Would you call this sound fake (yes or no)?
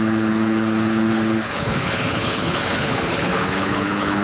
yes